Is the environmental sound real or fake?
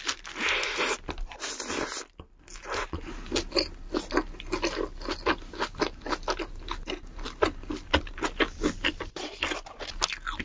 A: real